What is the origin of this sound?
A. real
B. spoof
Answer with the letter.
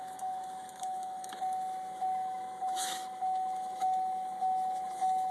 B